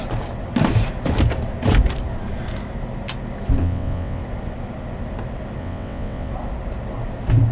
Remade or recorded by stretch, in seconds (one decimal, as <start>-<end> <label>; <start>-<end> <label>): 0.0-3.6 recorded; 3.6-4.2 remade; 4.2-5.6 recorded; 5.6-6.3 remade; 6.3-7.5 recorded